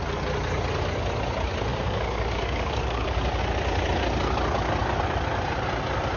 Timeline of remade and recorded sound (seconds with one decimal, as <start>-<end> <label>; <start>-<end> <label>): 0.0-1.7 recorded; 1.7-3.4 remade; 3.4-6.2 recorded